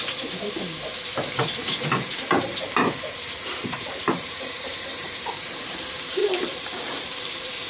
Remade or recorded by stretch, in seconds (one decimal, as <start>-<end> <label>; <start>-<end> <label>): 0.0-3.6 recorded; 3.6-5.6 remade; 5.6-6.2 recorded; 6.2-7.2 remade; 7.2-7.7 recorded